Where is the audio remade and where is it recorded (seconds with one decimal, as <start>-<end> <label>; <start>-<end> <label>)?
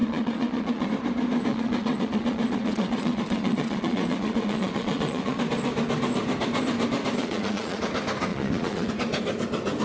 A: 0.0-0.9 remade; 0.9-1.5 recorded; 1.5-5.4 remade; 5.4-7.2 recorded; 7.2-7.8 remade; 7.8-8.3 recorded; 8.3-8.9 remade; 8.9-9.8 recorded